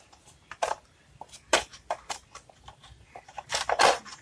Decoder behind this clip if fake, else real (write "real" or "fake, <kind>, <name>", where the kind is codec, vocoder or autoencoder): real